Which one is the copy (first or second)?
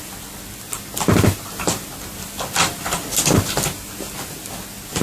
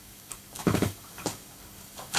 second